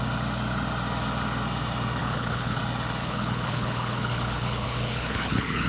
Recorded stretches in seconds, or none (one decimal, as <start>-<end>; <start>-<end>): 0.0-2.0; 2.6-3.0